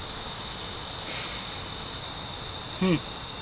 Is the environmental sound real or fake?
real